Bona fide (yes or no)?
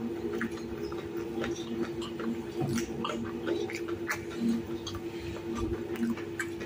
yes